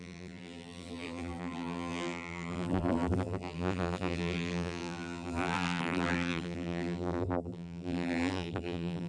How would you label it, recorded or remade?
remade